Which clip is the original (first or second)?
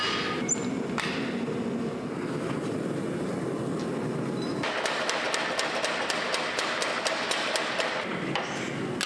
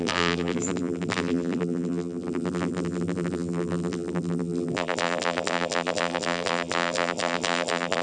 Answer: first